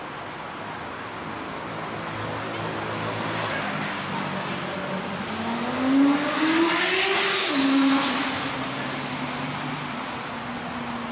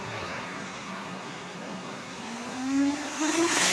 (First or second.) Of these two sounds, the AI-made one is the second